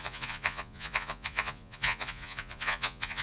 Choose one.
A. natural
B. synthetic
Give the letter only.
B